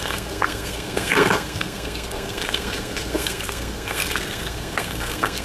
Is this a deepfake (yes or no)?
yes